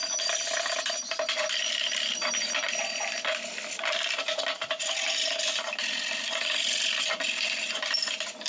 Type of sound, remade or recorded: recorded